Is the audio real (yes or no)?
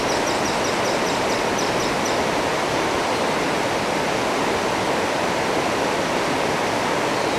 yes